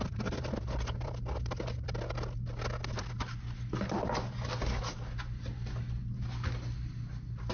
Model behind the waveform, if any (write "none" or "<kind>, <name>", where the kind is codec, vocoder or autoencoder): none